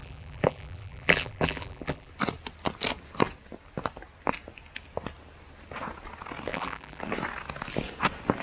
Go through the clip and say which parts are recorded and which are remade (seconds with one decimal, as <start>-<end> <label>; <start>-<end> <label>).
0.0-2.1 remade; 2.1-6.5 recorded; 6.5-7.0 remade; 7.0-8.4 recorded